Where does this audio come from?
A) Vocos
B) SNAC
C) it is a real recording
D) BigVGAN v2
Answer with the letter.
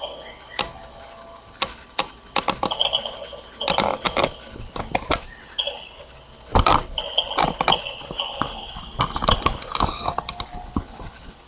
C